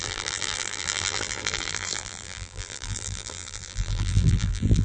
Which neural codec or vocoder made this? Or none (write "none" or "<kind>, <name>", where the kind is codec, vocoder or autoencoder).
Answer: vocoder, BigVGAN v2